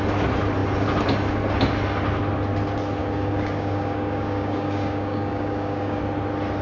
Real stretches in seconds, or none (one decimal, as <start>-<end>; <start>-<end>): 0.0-3.0; 6.0-6.6